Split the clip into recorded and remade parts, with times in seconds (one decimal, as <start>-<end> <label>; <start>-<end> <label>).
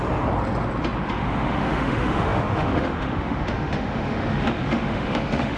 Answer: 0.0-1.1 recorded; 1.1-5.6 remade